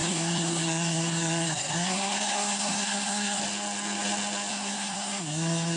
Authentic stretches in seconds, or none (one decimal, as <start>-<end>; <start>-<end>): 3.4-4.5